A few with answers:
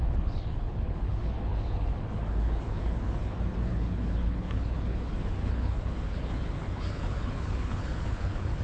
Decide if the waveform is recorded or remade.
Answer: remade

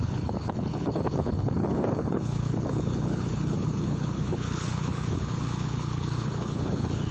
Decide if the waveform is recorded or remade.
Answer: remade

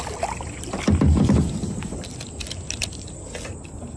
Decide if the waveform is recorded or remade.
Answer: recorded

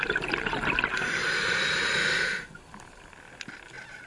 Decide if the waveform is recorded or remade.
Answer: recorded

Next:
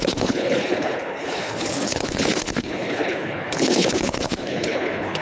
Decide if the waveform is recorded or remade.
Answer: remade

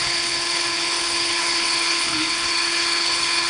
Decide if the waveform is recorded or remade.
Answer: remade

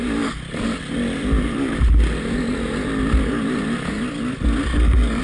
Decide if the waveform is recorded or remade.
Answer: recorded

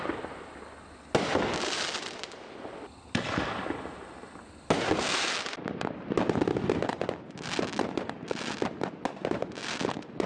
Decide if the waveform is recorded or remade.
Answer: recorded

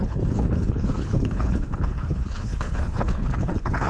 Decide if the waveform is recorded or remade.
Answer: remade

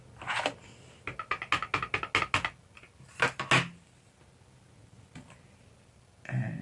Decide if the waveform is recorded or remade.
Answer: recorded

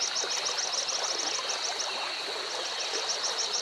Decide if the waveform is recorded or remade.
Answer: recorded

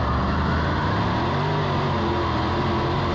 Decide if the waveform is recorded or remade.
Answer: recorded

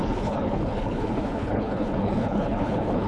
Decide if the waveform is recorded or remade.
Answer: remade